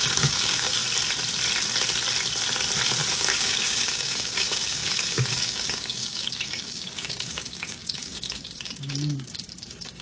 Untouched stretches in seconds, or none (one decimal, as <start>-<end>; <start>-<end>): 0.8-3.1